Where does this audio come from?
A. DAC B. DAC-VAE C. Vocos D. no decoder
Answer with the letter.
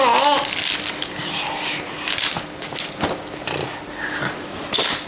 D